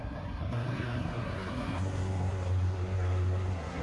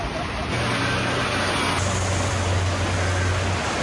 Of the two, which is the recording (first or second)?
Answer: second